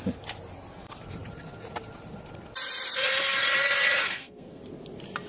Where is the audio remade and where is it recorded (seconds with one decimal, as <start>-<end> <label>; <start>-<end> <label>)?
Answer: 0.0-4.0 recorded; 4.0-4.6 remade; 4.6-5.3 recorded